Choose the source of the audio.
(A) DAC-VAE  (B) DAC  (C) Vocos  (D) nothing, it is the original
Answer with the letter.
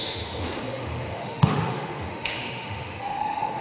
A